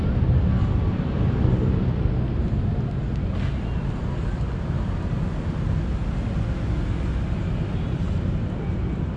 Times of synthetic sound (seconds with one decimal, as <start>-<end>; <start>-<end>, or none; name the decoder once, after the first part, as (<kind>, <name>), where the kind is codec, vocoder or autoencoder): none